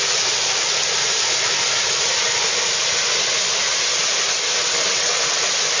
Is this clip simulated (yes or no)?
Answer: no